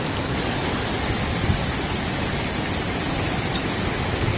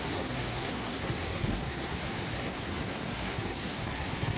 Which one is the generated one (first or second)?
second